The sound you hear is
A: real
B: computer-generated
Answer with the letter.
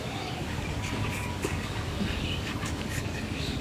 B